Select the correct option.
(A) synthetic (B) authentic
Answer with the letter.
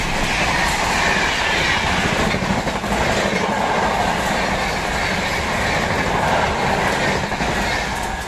B